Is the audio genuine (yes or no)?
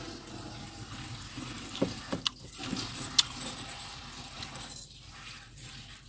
yes